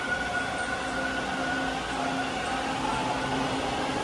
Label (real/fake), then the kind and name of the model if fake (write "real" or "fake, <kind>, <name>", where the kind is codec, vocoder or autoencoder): real